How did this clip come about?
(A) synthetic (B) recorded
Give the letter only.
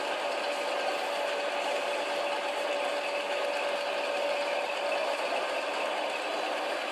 B